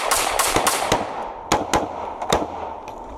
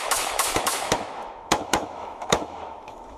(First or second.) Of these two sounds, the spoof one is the second